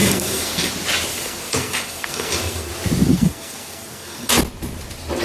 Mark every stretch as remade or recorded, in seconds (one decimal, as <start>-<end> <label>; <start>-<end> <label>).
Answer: 0.0-0.7 remade; 0.7-1.1 recorded; 1.1-2.7 remade; 2.7-3.1 recorded; 3.1-4.3 remade; 4.3-5.2 recorded